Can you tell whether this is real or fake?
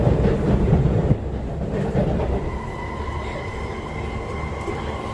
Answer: real